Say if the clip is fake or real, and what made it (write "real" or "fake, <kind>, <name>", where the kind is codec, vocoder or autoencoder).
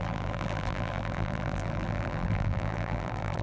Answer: fake, vocoder, BigVGAN v2